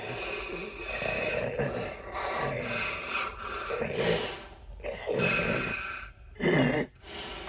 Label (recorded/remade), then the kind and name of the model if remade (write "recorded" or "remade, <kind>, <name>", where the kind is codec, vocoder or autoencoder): recorded